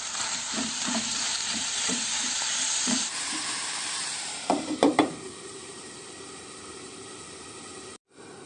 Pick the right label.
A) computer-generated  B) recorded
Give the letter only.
A